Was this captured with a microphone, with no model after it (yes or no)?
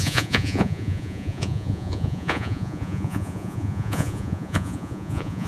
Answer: no